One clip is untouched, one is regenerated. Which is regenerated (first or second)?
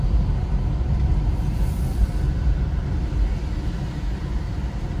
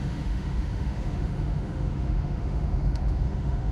second